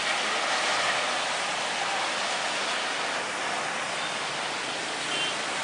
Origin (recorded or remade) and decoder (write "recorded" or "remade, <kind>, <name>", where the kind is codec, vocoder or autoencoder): recorded